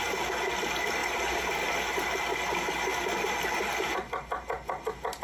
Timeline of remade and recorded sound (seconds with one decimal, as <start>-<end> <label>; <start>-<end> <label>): 0.0-5.2 recorded